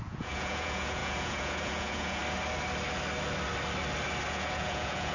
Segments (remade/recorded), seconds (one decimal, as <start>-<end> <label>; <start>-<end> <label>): 0.0-2.2 remade; 2.2-4.3 recorded; 4.3-5.1 remade